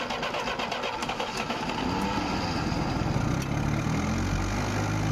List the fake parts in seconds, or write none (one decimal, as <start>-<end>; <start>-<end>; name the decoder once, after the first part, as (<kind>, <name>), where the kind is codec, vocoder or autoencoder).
1.0-1.7 (autoencoder, DAC-VAE)